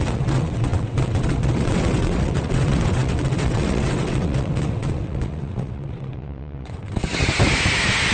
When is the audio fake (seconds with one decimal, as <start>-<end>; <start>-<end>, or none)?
0.0-7.1